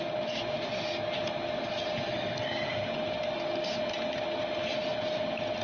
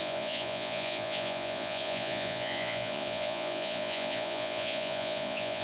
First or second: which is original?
first